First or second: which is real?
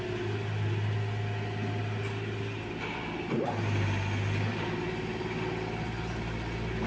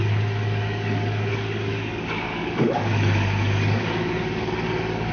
first